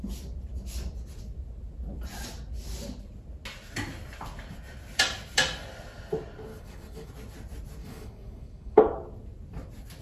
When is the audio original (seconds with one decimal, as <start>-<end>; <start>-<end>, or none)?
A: 0.0-6.5; 7.1-7.8; 8.8-10.0